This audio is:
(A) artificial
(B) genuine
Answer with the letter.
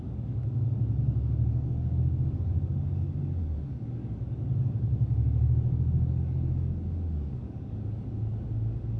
A